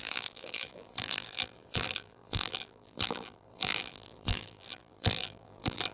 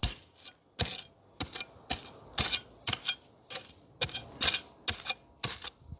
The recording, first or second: second